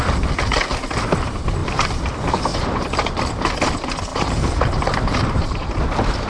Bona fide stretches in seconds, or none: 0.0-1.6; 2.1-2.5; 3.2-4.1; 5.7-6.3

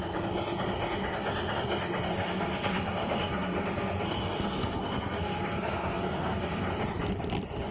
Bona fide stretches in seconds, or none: 0.0-2.1; 6.7-7.7

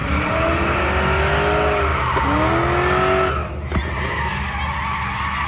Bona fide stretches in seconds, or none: 0.8-5.5

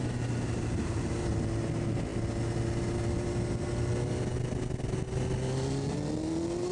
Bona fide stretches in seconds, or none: 0.0-6.7

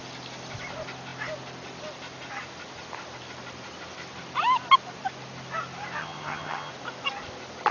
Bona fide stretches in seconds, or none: 0.0-6.0; 6.7-7.7

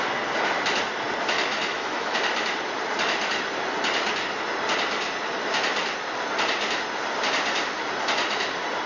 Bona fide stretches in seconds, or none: 0.0-1.5; 2.2-8.9

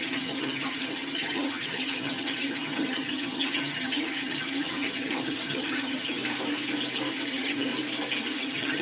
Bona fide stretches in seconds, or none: 6.2-7.3; 7.7-8.4